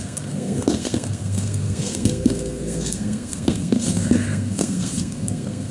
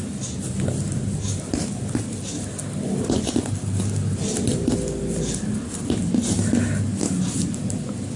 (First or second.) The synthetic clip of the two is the first